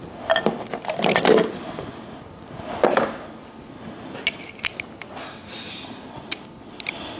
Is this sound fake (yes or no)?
no